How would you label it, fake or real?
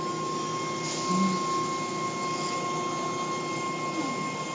real